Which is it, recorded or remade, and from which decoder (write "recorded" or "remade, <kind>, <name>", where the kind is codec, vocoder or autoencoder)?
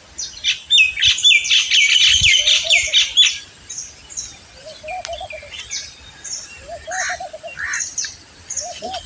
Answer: recorded